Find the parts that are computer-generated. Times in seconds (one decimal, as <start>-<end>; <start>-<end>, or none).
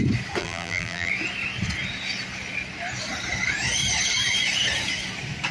0.4-1.1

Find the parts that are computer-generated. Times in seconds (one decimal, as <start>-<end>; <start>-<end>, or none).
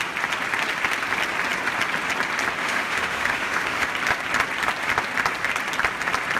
2.6-3.9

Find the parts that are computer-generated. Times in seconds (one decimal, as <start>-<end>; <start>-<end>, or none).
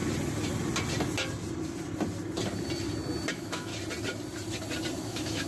3.3-3.7; 5.0-5.5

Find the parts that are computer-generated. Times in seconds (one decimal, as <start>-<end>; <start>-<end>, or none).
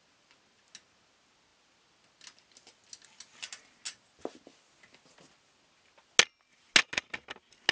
none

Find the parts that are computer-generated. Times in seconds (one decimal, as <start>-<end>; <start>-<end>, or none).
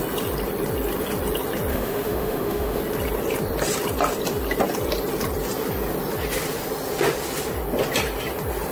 1.7-2.8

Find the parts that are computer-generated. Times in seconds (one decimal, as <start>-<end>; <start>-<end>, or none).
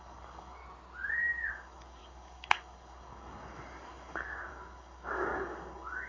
0.0-0.6; 1.5-6.1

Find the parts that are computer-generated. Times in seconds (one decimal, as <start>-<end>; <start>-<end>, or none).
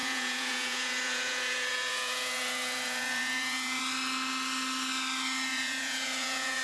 0.0-3.8; 5.5-6.6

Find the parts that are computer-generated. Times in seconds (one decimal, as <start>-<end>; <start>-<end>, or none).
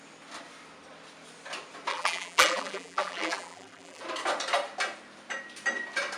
1.9-4.0